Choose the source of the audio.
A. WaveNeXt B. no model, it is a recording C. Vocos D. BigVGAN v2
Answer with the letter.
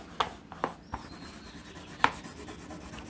B